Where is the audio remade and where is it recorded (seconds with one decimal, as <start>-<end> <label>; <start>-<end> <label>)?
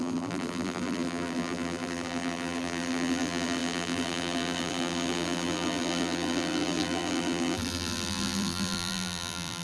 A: 0.0-9.6 remade